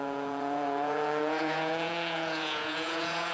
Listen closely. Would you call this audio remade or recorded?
remade